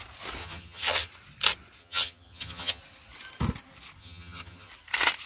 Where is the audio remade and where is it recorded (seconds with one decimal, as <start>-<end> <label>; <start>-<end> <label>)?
0.0-0.4 recorded; 0.4-1.1 remade; 1.1-1.8 recorded; 1.8-2.8 remade; 2.8-4.0 recorded; 4.0-4.7 remade; 4.7-5.3 recorded